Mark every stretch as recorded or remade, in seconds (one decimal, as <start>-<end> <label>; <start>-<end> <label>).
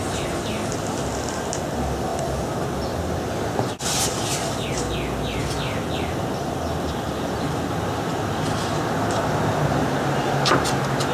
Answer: 0.0-11.1 recorded